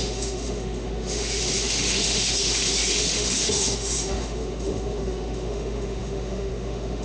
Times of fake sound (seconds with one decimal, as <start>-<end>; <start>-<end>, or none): 0.0-7.0